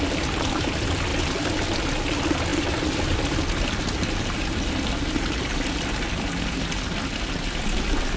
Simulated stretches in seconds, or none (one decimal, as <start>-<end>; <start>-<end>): none